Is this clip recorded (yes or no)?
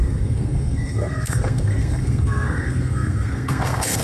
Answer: no